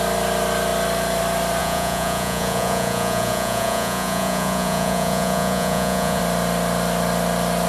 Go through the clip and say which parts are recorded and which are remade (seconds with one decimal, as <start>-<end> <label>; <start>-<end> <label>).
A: 0.0-1.6 recorded; 1.6-6.2 remade; 6.2-7.7 recorded

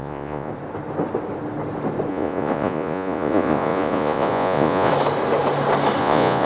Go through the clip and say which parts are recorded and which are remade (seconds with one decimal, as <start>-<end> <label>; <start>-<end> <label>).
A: 0.0-0.5 remade; 0.5-2.1 recorded; 2.1-4.9 remade; 4.9-6.0 recorded; 6.0-6.5 remade

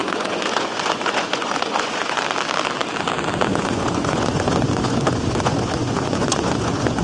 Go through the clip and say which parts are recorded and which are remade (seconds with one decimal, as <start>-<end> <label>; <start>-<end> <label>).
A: 0.0-2.2 remade; 2.2-3.5 recorded; 3.5-7.0 remade